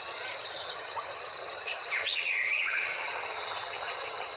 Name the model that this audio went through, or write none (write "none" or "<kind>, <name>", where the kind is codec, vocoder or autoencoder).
vocoder, HiFi-GAN